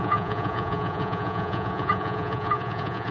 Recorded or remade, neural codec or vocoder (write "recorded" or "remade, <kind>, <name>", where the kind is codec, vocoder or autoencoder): remade, vocoder, Vocos